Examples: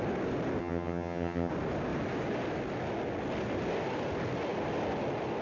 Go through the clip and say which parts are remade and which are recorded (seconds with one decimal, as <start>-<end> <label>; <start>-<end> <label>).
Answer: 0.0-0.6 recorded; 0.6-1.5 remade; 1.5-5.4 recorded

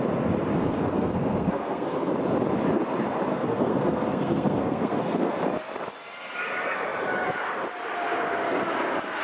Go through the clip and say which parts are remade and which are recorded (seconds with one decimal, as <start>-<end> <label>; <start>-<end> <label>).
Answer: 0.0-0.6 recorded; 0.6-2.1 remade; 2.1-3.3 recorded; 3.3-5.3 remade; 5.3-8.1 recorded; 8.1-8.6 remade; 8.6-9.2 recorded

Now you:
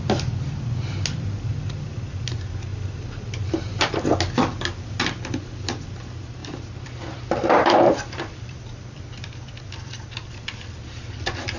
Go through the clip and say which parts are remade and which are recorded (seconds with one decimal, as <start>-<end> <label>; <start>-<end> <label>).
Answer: 0.0-6.4 recorded; 6.4-11.6 remade